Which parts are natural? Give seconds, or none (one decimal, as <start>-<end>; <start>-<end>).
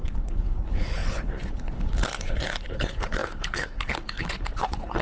none